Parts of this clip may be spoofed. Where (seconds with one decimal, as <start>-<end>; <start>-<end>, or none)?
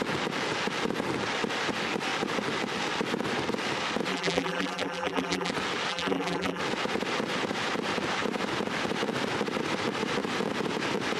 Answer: 4.1-5.5; 5.9-6.6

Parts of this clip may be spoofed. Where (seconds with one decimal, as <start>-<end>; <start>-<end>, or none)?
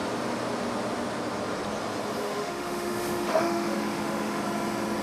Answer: 2.2-4.4